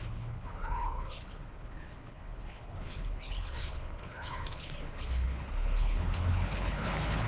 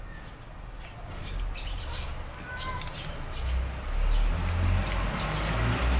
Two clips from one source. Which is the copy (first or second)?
first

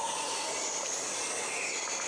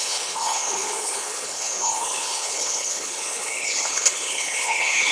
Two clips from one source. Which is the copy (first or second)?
second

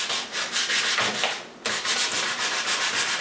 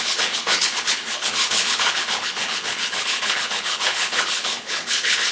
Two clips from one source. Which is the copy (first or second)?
second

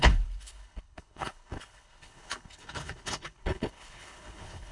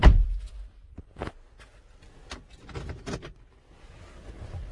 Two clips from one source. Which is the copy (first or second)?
first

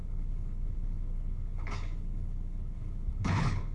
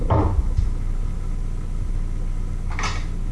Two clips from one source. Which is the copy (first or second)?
first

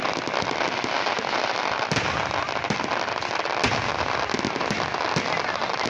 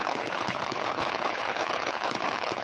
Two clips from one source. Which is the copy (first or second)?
second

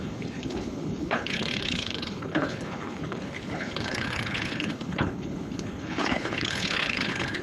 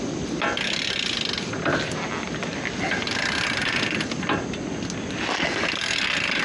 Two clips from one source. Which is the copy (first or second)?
first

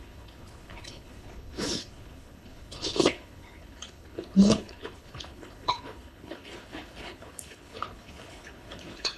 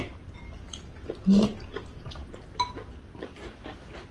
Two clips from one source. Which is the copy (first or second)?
first